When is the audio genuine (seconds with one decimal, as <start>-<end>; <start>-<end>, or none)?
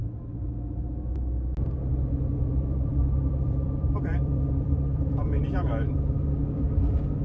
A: 0.0-2.3; 5.7-7.2